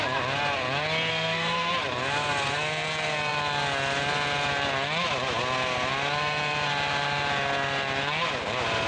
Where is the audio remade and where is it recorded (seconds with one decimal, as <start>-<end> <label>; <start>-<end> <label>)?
0.0-1.1 recorded; 1.1-1.7 remade; 1.7-8.9 recorded